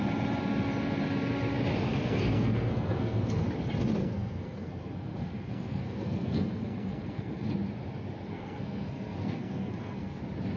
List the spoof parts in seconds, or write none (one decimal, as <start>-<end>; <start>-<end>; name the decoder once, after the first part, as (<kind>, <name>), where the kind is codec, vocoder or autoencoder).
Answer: 1.9-3.4 (codec, SNAC); 4.0-7.5; 8.3-10.2